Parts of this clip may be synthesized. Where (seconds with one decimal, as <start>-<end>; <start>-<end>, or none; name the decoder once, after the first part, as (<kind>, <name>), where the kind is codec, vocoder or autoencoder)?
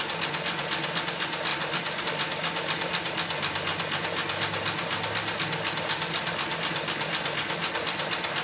none